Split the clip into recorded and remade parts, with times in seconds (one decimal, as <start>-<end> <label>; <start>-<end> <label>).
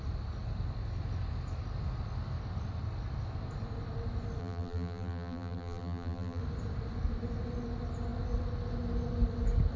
0.0-4.4 recorded; 4.4-6.4 remade; 6.4-9.8 recorded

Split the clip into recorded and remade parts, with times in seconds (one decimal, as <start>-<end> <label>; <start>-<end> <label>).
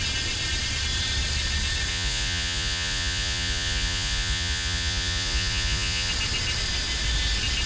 0.0-1.9 recorded; 1.9-6.1 remade; 6.1-7.7 recorded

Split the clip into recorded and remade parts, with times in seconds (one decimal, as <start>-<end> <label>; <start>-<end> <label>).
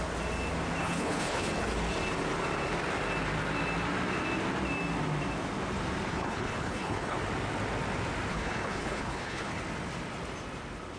0.0-0.8 recorded; 0.8-1.5 remade; 1.5-6.1 recorded; 6.1-7.2 remade; 7.2-8.3 recorded; 8.3-9.6 remade; 9.6-11.0 recorded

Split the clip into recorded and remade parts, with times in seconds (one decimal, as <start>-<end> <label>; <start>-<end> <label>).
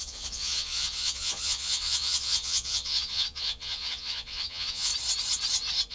0.0-4.9 remade; 4.9-5.9 recorded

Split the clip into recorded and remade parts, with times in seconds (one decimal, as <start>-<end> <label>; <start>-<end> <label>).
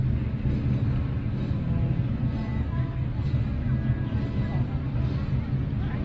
0.0-2.5 recorded; 2.5-3.3 remade; 3.3-6.0 recorded